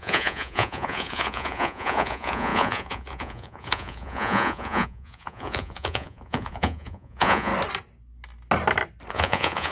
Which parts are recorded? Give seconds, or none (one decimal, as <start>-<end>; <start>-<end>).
7.5-9.1